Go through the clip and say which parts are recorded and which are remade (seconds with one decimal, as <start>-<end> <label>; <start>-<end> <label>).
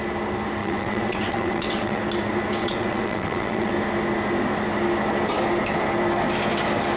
0.0-0.6 recorded; 0.6-2.0 remade; 2.0-2.6 recorded; 2.6-3.7 remade; 3.7-7.0 recorded